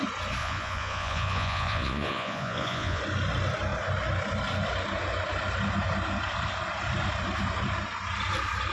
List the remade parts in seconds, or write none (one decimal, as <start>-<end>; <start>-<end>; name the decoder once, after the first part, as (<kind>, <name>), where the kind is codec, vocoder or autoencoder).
0.4-3.0 (vocoder, Vocos)